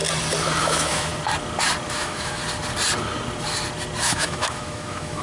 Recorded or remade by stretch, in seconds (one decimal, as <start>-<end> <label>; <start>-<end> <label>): 0.0-0.6 recorded; 0.6-1.1 remade; 1.1-1.9 recorded; 1.9-2.4 remade; 2.4-4.0 recorded; 4.0-5.2 remade